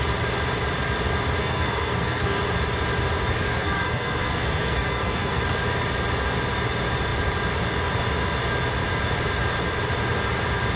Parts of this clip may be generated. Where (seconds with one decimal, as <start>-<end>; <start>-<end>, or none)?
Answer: 1.4-2.4; 3.5-5.4